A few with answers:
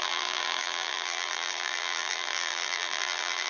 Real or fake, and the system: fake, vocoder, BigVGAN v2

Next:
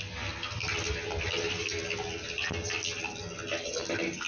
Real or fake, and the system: real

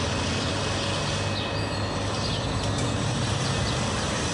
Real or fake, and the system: real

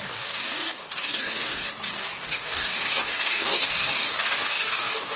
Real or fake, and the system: fake, codec, DAC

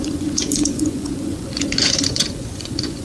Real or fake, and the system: fake, vocoder, Vocos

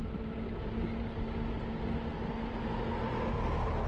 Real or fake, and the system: real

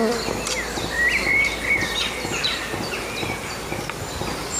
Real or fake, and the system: real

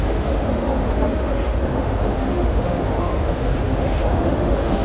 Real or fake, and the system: fake, autoencoder, DAC-VAE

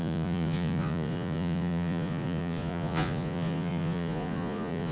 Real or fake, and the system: fake, vocoder, Vocos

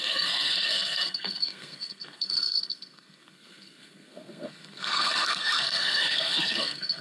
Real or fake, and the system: fake, codec, SNAC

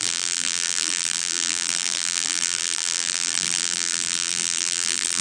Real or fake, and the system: fake, vocoder, BigVGAN v2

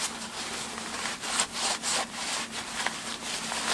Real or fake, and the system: real